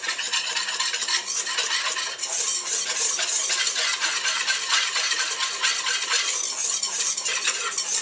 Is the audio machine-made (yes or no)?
no